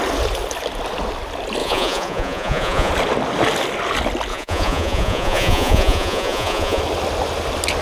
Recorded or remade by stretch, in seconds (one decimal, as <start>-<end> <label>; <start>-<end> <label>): 0.0-1.6 recorded; 1.6-2.9 remade; 2.9-4.3 recorded; 4.3-6.8 remade; 6.8-7.8 recorded